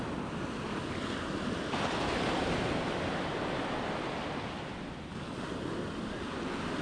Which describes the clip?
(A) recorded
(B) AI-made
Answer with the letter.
A